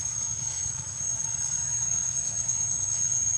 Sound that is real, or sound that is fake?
fake